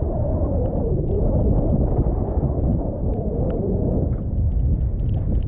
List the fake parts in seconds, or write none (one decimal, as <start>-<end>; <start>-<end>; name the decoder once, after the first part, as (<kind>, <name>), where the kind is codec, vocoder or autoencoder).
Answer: none